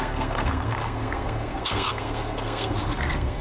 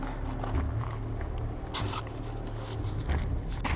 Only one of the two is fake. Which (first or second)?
first